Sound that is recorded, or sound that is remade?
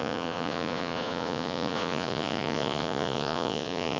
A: remade